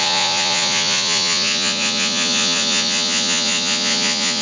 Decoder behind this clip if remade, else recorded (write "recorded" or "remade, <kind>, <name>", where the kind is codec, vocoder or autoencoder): remade, vocoder, Vocos